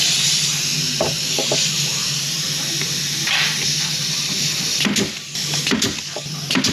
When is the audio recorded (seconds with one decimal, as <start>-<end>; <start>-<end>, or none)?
0.0-6.7